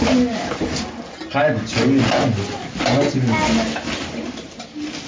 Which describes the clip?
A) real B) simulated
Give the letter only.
A